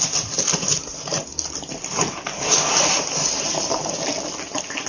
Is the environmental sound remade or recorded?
recorded